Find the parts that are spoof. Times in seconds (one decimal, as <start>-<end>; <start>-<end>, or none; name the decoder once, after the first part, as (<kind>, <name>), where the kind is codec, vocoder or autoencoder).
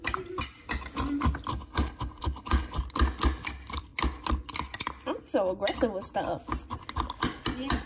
1.5-2.8 (codec, HILCodec)